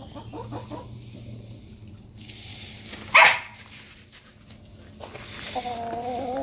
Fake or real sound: real